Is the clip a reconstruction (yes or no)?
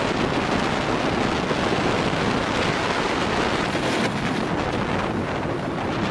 no